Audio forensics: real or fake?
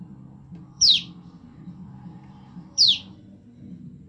fake